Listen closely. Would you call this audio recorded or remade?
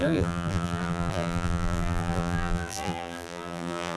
remade